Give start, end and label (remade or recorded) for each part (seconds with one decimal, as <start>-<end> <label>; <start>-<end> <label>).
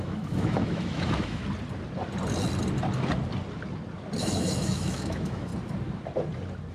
0.0-1.4 remade; 1.4-4.2 recorded; 4.2-5.5 remade; 5.5-6.7 recorded